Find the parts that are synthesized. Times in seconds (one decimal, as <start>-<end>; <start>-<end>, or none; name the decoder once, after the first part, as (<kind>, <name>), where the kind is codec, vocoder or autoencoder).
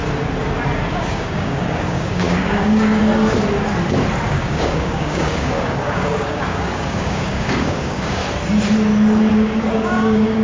0.9-3.0 (codec, DAC); 4.3-8.2; 9.3-10.4